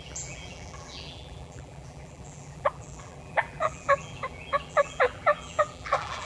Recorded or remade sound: remade